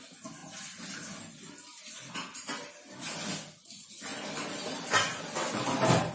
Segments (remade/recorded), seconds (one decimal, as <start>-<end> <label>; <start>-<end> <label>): 0.0-6.1 recorded